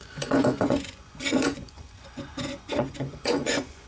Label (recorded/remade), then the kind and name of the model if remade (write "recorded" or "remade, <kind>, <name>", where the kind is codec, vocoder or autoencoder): remade, vocoder, Vocos